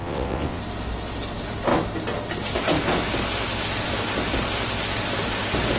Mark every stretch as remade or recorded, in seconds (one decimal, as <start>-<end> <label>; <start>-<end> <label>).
0.0-0.6 remade; 0.6-5.8 recorded